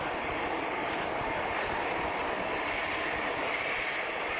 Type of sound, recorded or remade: remade